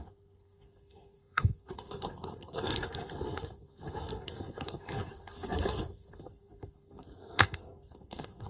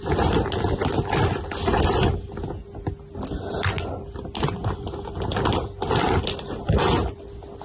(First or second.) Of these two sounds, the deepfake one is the first